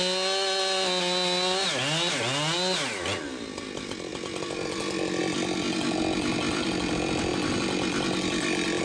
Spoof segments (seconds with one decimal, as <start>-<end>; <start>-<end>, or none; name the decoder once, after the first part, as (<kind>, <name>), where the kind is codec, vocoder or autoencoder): none